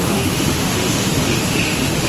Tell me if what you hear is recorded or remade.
remade